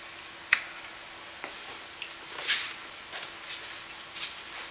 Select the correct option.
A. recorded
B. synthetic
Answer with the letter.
A